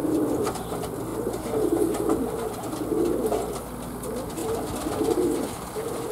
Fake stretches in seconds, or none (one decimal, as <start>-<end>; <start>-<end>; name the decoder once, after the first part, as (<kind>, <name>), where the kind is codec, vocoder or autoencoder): 4.4-6.1 (vocoder, BigVGAN v2)